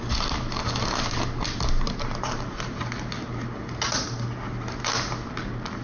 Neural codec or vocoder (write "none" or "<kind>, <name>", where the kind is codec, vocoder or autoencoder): none